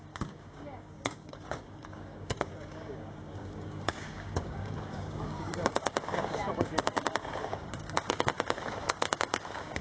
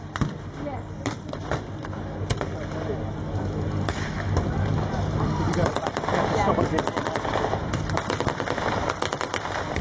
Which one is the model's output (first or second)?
first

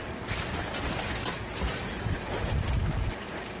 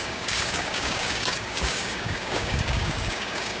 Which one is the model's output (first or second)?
second